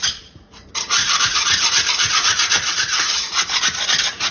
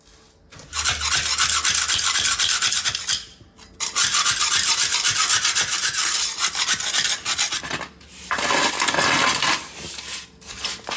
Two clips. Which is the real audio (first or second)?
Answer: second